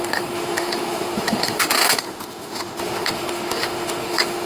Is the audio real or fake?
fake